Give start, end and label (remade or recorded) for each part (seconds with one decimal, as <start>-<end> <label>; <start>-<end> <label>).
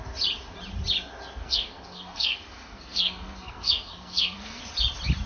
0.0-1.4 recorded; 1.4-4.6 remade; 4.6-5.3 recorded